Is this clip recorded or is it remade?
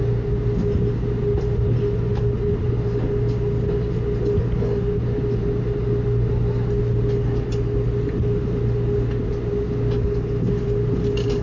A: recorded